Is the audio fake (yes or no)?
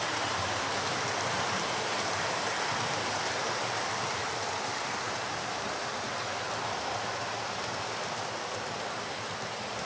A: yes